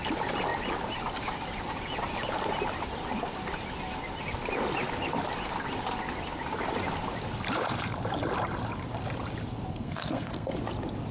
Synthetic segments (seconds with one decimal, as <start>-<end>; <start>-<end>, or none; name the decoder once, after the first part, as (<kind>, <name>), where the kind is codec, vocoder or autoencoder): 9.7-10.6 (codec, SNAC)

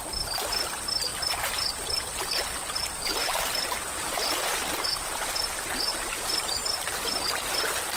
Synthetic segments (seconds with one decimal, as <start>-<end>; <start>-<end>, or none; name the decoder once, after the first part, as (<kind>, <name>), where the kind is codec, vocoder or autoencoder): 1.1-1.7 (vocoder, BigVGAN v2); 3.2-4.5; 5.9-6.6

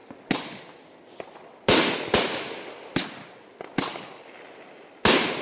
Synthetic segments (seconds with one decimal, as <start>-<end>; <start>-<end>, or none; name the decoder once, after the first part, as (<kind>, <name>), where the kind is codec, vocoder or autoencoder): none

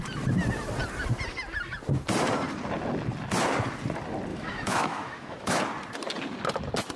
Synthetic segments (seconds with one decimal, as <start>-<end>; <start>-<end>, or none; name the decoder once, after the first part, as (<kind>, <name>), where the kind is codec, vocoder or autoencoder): 4.3-5.6 (autoencoder, DAC-VAE)

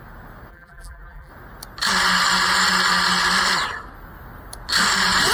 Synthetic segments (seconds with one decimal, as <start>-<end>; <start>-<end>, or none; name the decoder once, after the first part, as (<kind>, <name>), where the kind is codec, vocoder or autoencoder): 0.5-1.3 (vocoder, BigVGAN v2)